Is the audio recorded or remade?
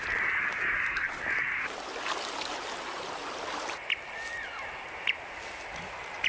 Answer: recorded